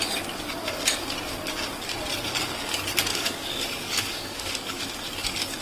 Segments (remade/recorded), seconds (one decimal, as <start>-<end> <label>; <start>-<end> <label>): 0.0-3.1 recorded; 3.1-4.8 remade; 4.8-5.6 recorded